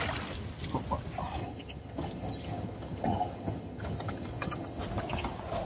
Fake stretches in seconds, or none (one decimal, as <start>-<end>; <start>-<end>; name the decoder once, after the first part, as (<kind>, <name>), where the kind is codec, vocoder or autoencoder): 1.4-4.8 (vocoder, HiFi-GAN)